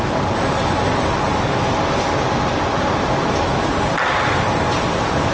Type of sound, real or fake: real